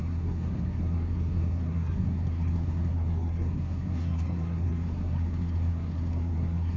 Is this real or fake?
fake